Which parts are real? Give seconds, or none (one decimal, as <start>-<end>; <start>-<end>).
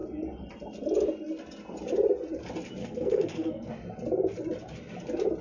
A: 0.0-2.8; 3.7-5.4